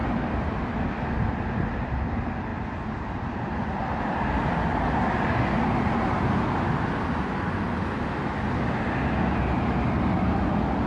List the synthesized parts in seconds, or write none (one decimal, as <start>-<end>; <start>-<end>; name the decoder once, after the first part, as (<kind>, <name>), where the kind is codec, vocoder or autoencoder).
0.0-1.4 (vocoder, BigVGAN v2); 2.5-3.8